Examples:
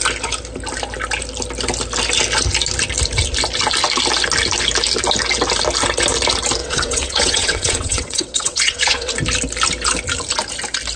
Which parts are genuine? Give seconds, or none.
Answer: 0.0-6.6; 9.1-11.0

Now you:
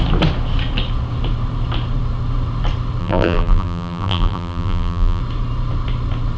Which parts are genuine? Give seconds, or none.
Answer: 0.0-3.0; 5.2-6.4

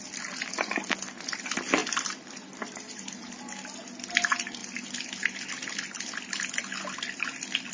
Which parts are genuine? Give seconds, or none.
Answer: 0.0-7.7

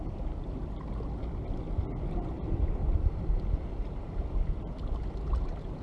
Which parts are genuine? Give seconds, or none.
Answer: 0.0-2.8; 4.9-5.8

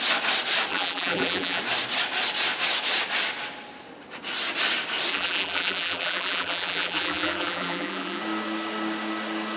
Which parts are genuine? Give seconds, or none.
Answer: 0.0-0.7; 1.6-5.1; 8.2-9.6

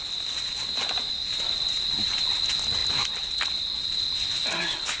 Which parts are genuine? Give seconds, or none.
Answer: 0.0-5.0

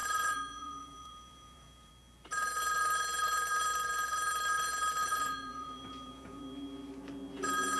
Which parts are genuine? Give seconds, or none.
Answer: 1.9-5.0; 6.4-7.8

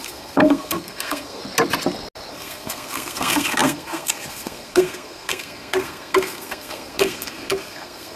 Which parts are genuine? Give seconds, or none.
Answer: 1.4-2.3